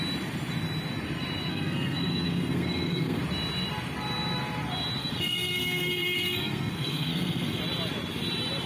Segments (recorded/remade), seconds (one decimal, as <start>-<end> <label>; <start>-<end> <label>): 0.0-1.5 recorded; 1.5-3.2 remade; 3.2-5.0 recorded; 5.0-7.6 remade; 7.6-8.7 recorded